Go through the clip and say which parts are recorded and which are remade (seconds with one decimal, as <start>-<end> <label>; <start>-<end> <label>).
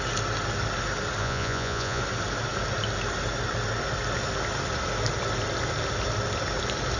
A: 0.0-1.2 recorded; 1.2-2.0 remade; 2.0-7.0 recorded